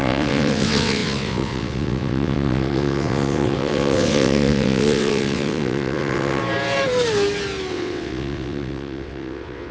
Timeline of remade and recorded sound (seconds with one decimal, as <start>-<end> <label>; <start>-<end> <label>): 0.0-6.4 remade; 6.4-7.7 recorded; 7.7-9.7 remade